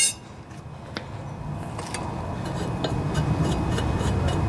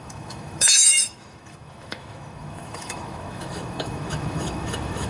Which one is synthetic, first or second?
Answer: second